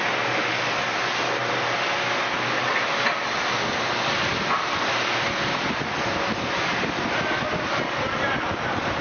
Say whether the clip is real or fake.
real